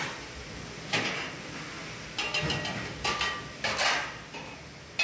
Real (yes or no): yes